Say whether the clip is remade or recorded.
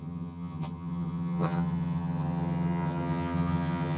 remade